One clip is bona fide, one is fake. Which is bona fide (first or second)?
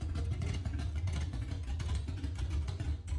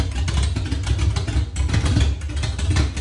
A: second